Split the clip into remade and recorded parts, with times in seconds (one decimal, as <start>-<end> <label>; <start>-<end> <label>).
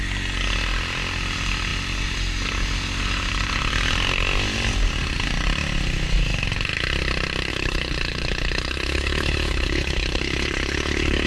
0.0-7.5 recorded; 7.5-11.3 remade